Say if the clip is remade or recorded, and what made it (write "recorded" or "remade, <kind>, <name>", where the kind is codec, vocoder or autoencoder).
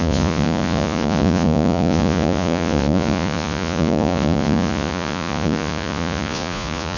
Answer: remade, vocoder, Vocos